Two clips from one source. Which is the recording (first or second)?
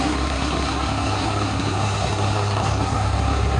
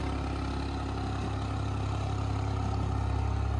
second